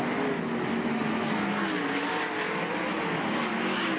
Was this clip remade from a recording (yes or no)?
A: no